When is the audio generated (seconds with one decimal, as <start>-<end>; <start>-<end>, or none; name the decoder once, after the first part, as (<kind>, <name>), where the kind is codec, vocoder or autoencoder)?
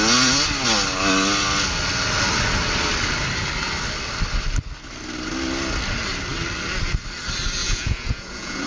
7.6-8.7 (vocoder, Vocos)